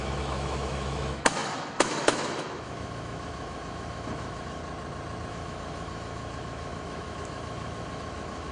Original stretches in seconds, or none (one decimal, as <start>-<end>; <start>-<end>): 4.6-5.3